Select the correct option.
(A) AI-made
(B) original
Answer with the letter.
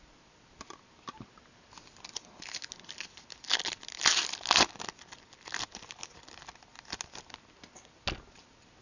B